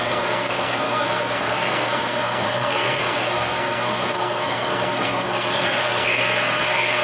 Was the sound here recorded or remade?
remade